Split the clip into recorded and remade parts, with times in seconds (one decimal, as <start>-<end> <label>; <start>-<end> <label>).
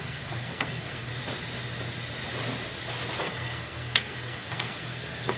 0.0-1.1 remade; 1.1-3.2 recorded; 3.2-5.4 remade